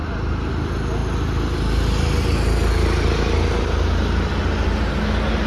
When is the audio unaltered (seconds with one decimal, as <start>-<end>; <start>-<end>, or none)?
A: 0.0-5.5

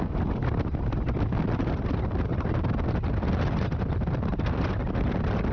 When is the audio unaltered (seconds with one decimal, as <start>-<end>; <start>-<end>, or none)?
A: 0.0-5.5

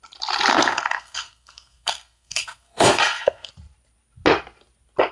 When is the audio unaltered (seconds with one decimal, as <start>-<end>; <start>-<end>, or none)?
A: 0.0-0.5; 3.5-5.1